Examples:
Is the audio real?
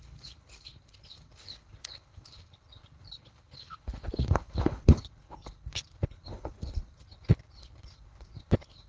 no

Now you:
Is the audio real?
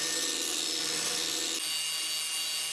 yes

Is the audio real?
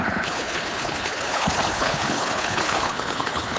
no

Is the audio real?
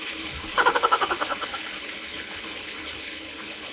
no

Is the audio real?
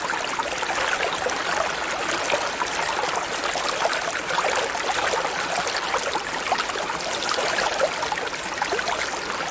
yes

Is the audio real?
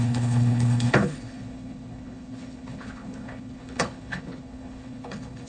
no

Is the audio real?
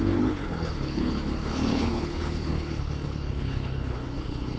no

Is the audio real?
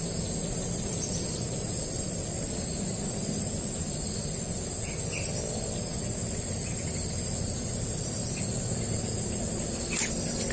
yes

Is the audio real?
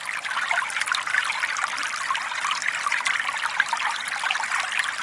yes